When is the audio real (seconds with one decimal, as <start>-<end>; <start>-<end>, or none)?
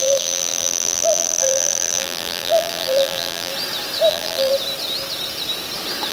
3.5-4.1; 4.5-6.1